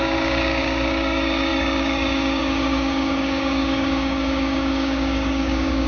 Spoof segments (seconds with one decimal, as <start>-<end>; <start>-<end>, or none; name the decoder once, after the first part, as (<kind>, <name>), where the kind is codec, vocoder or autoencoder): 0.0-5.9 (codec, DAC)